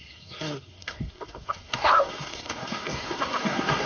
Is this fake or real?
fake